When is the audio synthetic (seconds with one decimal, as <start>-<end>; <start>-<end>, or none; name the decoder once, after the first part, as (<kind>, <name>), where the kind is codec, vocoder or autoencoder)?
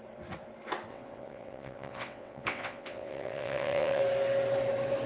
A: 0.9-4.0 (vocoder, WaveNeXt)